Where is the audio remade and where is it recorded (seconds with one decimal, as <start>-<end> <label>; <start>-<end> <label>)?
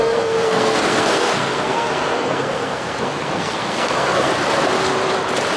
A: 0.0-4.3 remade; 4.3-5.6 recorded